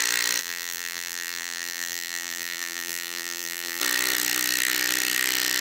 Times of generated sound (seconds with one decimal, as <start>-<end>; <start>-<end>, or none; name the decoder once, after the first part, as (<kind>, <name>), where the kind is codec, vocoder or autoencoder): 0.4-3.8 (vocoder, BigVGAN v2)